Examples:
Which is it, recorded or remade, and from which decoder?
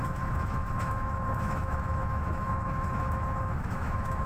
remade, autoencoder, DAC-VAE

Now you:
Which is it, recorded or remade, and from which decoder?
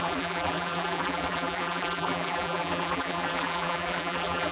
remade, vocoder, BigVGAN v2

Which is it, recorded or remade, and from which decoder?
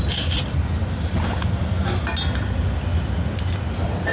recorded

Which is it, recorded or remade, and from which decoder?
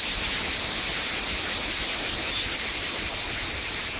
recorded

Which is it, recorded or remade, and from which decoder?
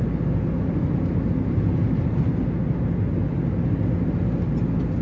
recorded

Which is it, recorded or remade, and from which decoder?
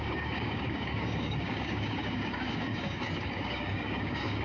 remade, codec, DAC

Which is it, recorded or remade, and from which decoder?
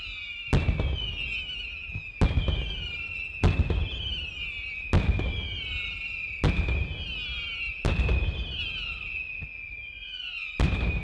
recorded